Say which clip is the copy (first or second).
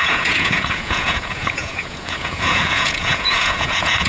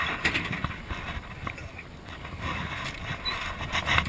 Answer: first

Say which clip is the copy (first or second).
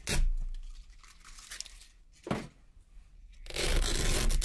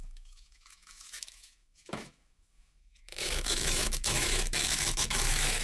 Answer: second